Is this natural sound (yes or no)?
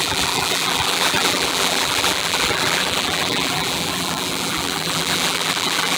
no